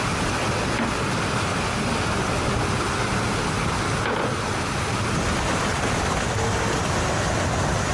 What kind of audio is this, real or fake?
real